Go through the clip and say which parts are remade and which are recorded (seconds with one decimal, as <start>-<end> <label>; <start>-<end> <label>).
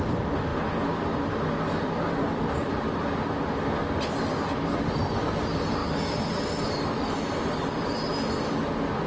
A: 0.0-9.1 recorded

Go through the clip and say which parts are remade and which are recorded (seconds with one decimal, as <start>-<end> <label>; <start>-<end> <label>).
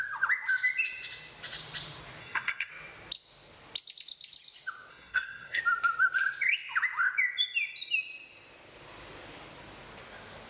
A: 0.0-2.2 recorded; 2.2-2.7 remade; 2.7-4.9 recorded; 4.9-5.6 remade; 5.6-10.5 recorded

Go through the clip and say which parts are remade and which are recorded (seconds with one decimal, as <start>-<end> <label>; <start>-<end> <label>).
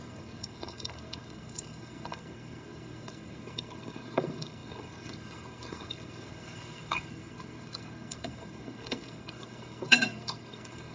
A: 0.0-10.9 remade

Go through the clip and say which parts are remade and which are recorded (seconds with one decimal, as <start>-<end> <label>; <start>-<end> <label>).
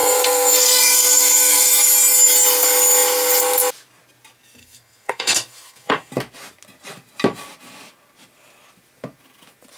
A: 0.0-1.7 remade; 1.7-4.6 recorded; 4.6-6.1 remade; 6.1-9.8 recorded